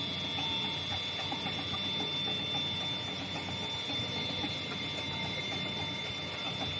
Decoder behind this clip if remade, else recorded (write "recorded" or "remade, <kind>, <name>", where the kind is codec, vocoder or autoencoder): recorded